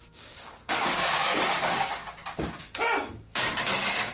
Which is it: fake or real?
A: fake